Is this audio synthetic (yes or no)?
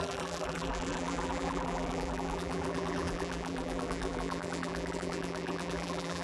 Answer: yes